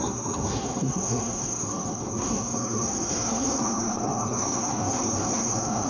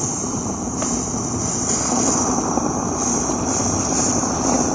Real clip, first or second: second